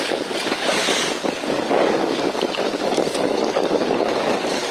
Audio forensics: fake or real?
fake